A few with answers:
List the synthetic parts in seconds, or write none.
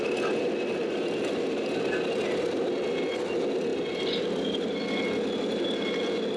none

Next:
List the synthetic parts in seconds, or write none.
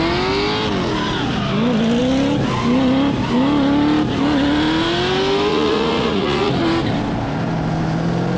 5.5-6.5 (vocoder, Vocos)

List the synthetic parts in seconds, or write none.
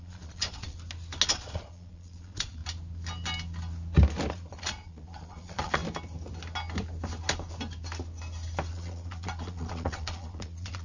0.0-0.7 (vocoder, Vocos); 1.3-2.6; 4.3-5.8; 8.7-10.8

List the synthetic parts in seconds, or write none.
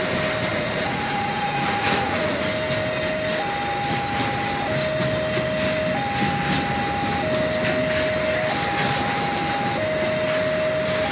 0.5-2.4 (vocoder, Vocos)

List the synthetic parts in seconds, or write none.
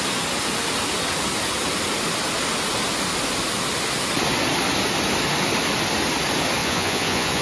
6.6-7.4 (vocoder, Vocos)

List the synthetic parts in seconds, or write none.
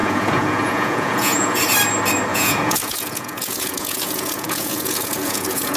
0.0-1.6 (vocoder, Vocos); 2.3-5.8